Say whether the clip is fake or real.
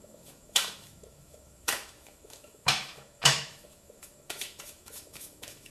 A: fake